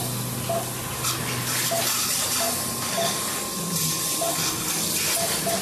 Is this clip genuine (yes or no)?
yes